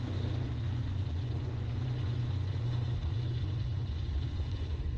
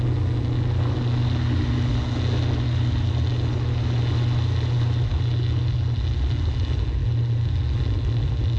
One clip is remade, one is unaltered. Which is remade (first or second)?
first